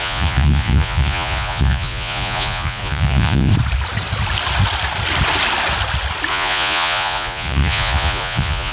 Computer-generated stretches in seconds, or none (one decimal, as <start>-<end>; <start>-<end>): 0.0-3.5; 6.3-8.7